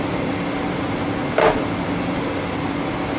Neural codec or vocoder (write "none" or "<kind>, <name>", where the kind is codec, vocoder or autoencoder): none